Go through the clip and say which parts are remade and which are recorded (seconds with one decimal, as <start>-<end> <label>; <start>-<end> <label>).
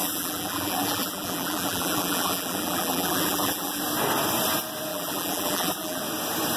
0.0-3.8 remade; 3.8-4.9 recorded; 4.9-6.0 remade; 6.0-6.6 recorded